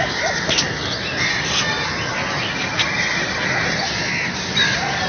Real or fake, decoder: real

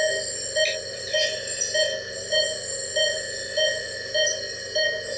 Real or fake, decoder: real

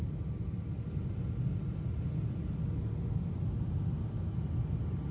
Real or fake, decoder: real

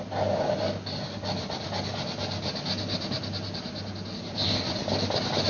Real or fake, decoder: real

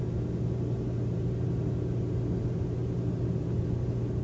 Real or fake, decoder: real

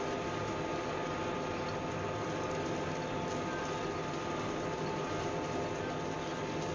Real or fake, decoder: real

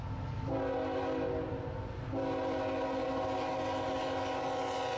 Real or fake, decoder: real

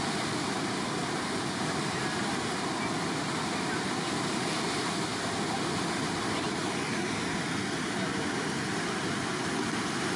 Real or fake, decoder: fake, vocoder, BigVGAN v2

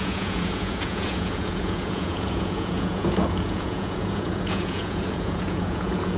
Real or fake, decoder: fake, vocoder, Vocos